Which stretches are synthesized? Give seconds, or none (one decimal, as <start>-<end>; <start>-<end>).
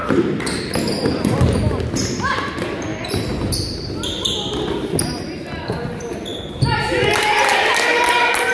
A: none